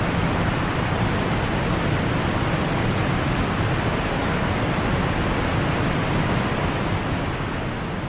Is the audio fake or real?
real